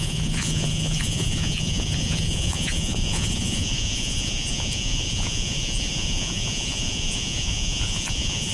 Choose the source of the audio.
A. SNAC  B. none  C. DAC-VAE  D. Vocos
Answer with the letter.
D